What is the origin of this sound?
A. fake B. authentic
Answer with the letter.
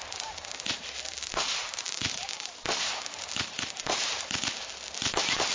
A